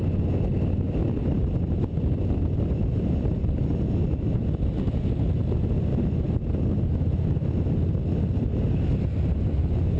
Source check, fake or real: real